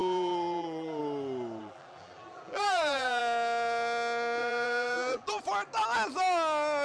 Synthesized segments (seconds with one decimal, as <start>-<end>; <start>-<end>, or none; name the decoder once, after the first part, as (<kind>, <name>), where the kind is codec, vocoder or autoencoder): 0.0-1.0 (vocoder, BigVGAN v2); 1.6-3.2; 4.4-5.4